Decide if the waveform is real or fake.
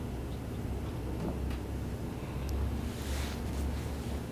real